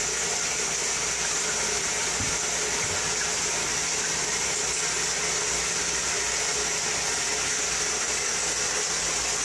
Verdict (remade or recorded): recorded